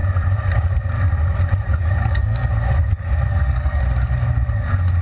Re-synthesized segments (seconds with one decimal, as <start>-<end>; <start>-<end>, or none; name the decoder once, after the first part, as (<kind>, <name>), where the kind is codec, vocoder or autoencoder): 2.0-2.5 (codec, SNAC); 3.3-3.8